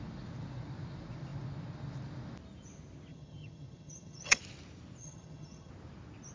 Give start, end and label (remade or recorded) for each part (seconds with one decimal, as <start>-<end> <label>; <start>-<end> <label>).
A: 0.0-3.1 recorded; 3.1-4.4 remade; 4.4-5.0 recorded; 5.0-5.7 remade; 5.7-6.3 recorded